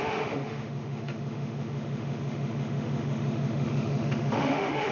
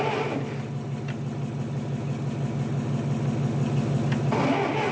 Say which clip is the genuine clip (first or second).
second